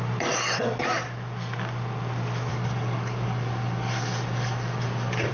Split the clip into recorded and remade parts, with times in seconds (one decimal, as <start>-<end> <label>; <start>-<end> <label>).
0.0-2.5 recorded; 2.5-5.3 remade

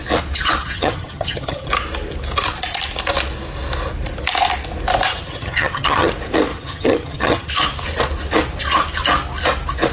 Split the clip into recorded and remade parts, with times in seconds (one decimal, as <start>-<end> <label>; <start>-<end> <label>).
0.0-0.6 recorded; 0.6-1.7 remade; 1.7-5.1 recorded; 5.1-6.1 remade; 6.1-6.5 recorded; 6.5-7.5 remade; 7.5-9.9 recorded

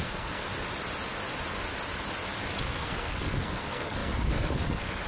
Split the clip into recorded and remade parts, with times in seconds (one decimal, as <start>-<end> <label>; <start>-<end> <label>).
0.0-0.5 remade; 0.5-2.6 recorded; 2.6-5.1 remade

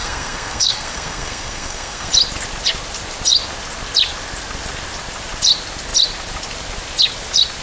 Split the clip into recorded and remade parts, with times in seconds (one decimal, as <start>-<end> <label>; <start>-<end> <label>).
0.0-2.1 remade; 2.1-7.6 recorded

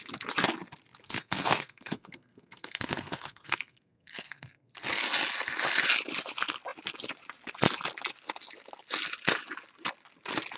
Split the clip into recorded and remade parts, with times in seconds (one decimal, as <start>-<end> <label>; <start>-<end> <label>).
0.0-1.0 recorded; 1.0-4.7 remade; 4.7-10.6 recorded

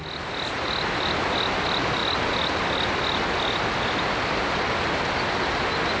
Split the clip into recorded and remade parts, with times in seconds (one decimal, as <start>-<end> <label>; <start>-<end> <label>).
0.0-6.0 recorded

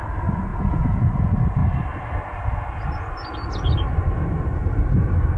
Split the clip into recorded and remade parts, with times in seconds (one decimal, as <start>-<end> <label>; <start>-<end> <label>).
0.0-0.5 recorded; 0.5-1.1 remade; 1.1-5.4 recorded

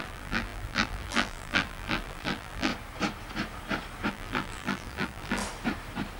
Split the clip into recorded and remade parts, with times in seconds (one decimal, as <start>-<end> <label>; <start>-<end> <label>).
0.0-2.7 remade; 2.7-4.1 recorded; 4.1-5.4 remade; 5.4-6.2 recorded